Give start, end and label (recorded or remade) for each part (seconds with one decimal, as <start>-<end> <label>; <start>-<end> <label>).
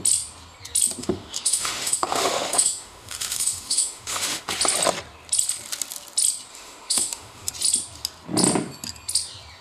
0.0-1.0 recorded; 1.0-4.5 remade; 4.5-6.5 recorded; 6.5-7.5 remade; 7.5-9.6 recorded